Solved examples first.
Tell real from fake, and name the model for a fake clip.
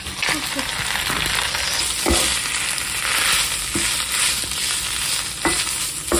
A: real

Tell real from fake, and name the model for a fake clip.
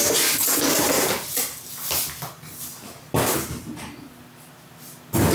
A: real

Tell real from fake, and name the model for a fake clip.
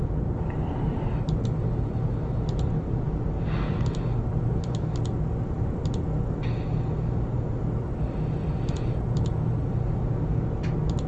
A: real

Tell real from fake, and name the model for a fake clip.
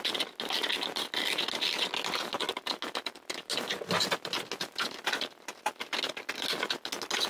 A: real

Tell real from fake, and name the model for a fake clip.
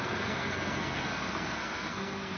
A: fake, codec, SNAC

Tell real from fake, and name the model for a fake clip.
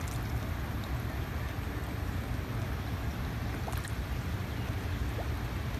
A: real